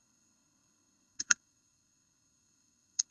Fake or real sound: fake